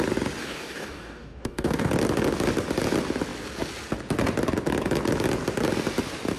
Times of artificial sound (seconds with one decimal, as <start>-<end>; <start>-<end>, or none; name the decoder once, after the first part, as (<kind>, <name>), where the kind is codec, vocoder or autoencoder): 0.4-1.9 (codec, DAC)